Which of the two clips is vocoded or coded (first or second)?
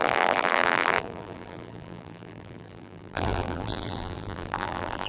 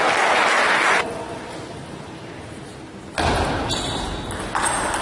first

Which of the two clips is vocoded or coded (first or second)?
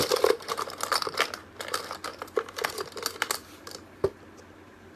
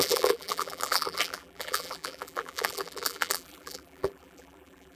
second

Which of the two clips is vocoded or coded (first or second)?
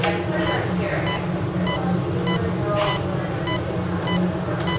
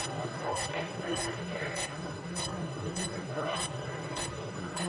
second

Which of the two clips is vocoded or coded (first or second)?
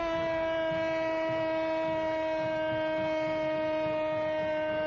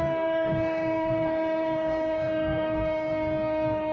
second